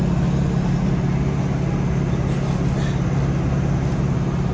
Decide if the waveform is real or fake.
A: real